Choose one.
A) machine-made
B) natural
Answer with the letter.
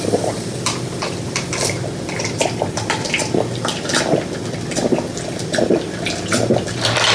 A